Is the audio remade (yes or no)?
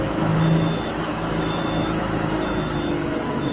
yes